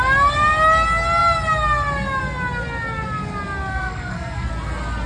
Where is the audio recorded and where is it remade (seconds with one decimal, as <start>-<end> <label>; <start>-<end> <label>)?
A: 0.0-3.7 recorded; 3.7-4.5 remade; 4.5-5.1 recorded